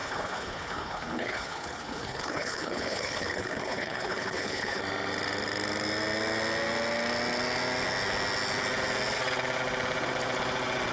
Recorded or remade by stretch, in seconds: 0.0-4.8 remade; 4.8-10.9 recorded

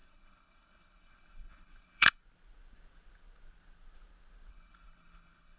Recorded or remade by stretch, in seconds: 0.0-2.2 remade; 2.2-4.5 recorded; 4.5-5.6 remade

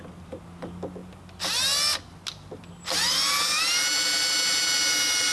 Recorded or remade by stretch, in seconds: 0.0-5.3 recorded

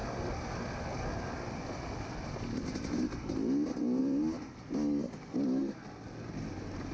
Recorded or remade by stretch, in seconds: 0.0-6.9 recorded

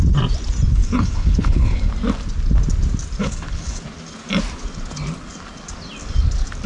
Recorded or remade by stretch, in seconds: 0.0-0.8 recorded; 0.8-1.9 remade; 1.9-3.2 recorded; 3.2-3.8 remade; 3.8-6.7 recorded

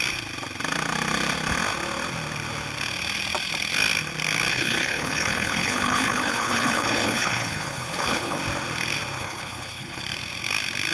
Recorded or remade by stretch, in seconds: 0.0-4.5 recorded; 4.5-8.4 remade; 8.4-9.2 recorded; 9.2-10.0 remade; 10.0-10.9 recorded